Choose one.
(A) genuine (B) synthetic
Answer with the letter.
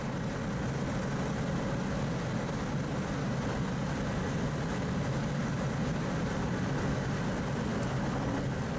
A